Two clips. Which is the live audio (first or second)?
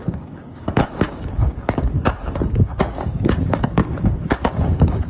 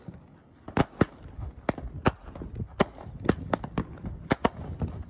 second